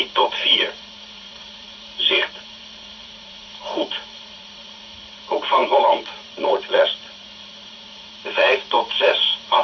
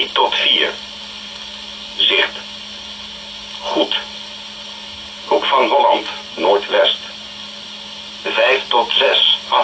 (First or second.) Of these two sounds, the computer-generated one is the first